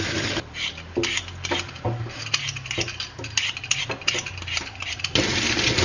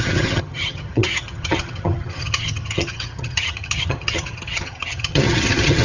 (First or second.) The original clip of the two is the first